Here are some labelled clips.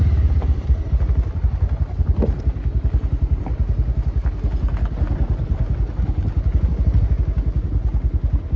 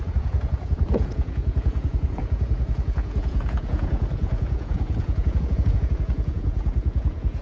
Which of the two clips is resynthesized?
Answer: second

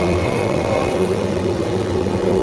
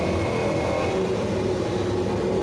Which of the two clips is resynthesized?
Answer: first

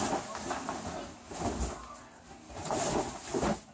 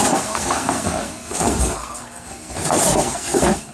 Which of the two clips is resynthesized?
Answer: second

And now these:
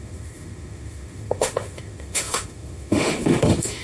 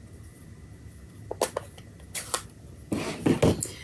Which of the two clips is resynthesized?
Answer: first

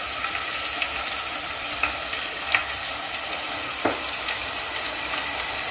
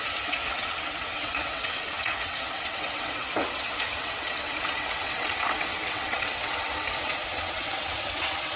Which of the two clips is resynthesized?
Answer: second